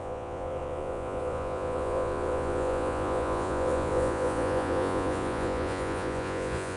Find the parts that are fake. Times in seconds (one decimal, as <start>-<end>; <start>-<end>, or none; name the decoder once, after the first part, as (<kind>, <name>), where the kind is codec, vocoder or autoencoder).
0.0-6.8 (vocoder, Vocos)